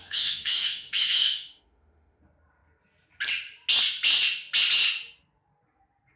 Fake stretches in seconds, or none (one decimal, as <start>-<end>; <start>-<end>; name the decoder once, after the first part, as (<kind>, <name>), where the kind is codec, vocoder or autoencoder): 0.0-2.2 (autoencoder, DAC-VAE)